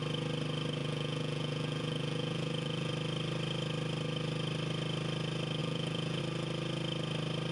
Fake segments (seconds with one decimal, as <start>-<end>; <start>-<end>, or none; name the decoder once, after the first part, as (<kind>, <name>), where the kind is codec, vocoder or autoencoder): 0.8-2.9 (vocoder, Vocos); 5.6-6.2